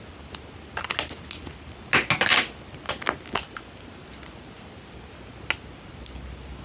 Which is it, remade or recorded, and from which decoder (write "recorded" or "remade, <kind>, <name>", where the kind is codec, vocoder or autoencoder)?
recorded